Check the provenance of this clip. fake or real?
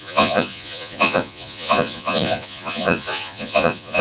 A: fake